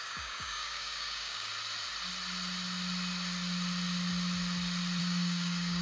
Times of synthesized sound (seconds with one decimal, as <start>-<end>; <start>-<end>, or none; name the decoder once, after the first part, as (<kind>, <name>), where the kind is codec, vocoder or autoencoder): 0.0-1.5 (codec, DAC); 5.0-5.8